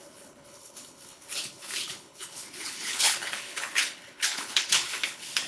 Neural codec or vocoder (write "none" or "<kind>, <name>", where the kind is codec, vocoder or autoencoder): codec, HILCodec